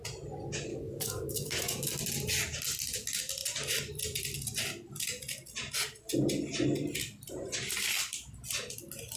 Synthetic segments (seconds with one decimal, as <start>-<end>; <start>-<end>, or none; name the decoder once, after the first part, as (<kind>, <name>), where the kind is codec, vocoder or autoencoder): 0.7-2.0 (codec, DAC)